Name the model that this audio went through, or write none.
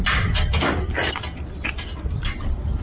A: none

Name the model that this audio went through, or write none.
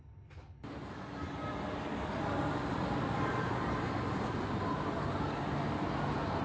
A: none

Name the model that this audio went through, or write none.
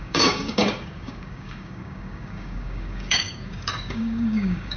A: codec, DAC